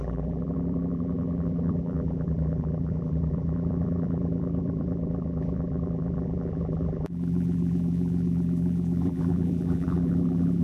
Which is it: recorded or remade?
remade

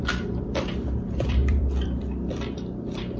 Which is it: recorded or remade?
remade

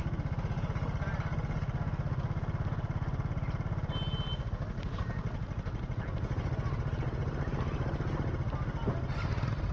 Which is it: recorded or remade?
recorded